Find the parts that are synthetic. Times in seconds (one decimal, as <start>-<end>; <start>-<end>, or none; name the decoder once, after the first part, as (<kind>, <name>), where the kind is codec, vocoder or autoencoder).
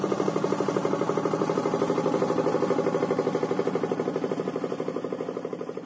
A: none